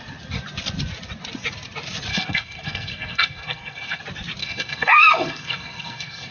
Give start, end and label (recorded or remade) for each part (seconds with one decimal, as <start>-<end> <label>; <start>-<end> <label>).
0.0-2.1 recorded; 2.1-4.0 remade; 4.0-4.4 recorded; 4.4-6.3 remade